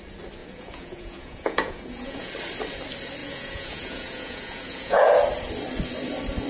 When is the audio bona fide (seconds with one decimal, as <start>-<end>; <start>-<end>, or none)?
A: 0.0-0.4; 2.3-3.2; 5.1-6.5